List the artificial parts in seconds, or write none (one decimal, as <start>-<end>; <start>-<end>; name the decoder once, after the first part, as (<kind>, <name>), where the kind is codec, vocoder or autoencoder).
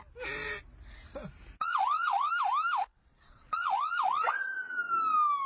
1.6-2.3 (vocoder, Vocos); 2.9-4.8